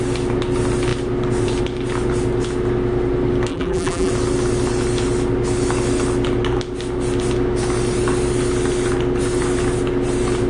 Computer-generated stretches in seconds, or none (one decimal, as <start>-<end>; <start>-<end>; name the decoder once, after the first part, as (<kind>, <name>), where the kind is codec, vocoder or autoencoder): 3.5-4.1 (vocoder, BigVGAN v2)